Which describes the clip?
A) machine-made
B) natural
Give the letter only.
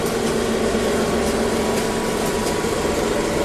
B